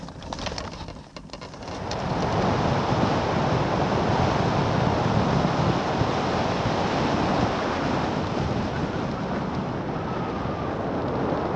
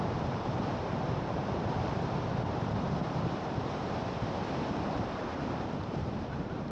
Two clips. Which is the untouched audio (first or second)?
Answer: first